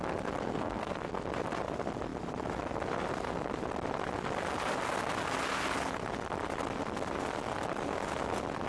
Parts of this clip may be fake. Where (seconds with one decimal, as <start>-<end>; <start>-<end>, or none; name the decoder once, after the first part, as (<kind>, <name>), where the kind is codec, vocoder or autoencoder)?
0.5-1.1 (codec, SNAC)